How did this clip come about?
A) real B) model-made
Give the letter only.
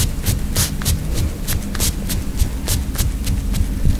A